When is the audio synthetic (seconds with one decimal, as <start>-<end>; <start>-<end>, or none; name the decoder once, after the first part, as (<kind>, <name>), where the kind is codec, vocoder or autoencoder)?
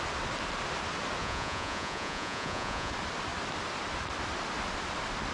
1.2-2.9 (vocoder, Vocos)